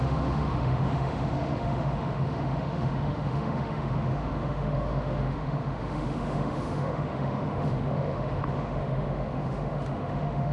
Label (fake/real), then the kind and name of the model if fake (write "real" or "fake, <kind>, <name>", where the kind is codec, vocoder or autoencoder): fake, autoencoder, DAC-VAE